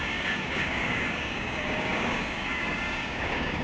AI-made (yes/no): yes